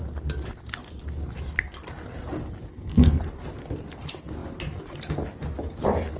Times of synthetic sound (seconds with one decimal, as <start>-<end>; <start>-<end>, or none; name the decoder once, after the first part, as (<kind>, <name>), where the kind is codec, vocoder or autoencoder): 2.7-3.2 (codec, SNAC)